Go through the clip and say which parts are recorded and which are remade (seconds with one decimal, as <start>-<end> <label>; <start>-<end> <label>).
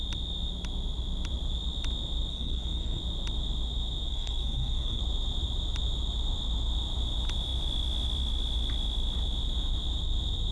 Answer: 0.0-2.3 recorded; 2.3-3.0 remade; 3.0-4.1 recorded; 4.1-5.0 remade; 5.0-10.5 recorded